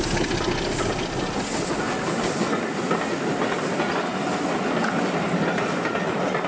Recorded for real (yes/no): yes